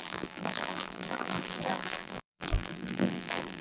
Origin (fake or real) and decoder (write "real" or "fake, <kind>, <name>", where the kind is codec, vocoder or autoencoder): fake, vocoder, BigVGAN v2